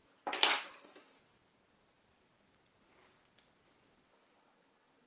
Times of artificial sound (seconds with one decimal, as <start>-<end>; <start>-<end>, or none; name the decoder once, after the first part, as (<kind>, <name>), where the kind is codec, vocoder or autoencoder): none